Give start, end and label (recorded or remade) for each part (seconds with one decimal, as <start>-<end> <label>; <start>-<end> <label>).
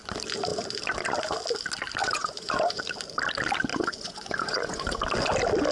0.0-2.0 recorded; 2.0-2.8 remade; 2.8-3.7 recorded; 3.7-4.9 remade; 4.9-5.7 recorded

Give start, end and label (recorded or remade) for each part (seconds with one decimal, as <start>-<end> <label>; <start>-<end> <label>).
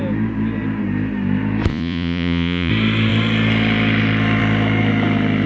0.0-1.7 recorded; 1.7-2.7 remade; 2.7-5.5 recorded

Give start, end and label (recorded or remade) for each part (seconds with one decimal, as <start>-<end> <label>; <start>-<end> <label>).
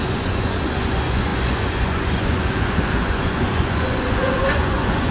0.0-5.1 remade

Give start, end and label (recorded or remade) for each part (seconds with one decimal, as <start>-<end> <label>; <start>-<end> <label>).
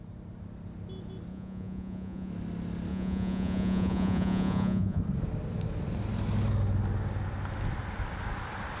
0.0-1.3 recorded; 1.3-2.3 remade; 2.3-2.9 recorded; 2.9-5.0 remade; 5.0-8.8 recorded